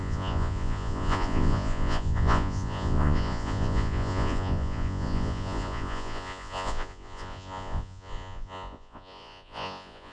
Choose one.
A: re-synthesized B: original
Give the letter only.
A